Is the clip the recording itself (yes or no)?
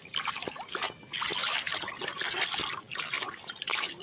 yes